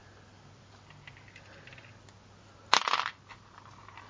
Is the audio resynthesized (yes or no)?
no